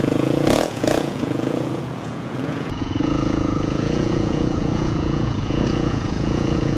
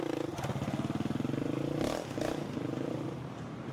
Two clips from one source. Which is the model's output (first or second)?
first